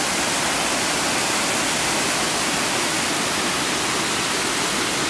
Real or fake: real